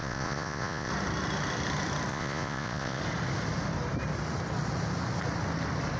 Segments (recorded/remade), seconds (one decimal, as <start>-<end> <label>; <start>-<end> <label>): 0.0-0.9 remade; 0.9-2.1 recorded; 2.1-3.0 remade; 3.0-6.0 recorded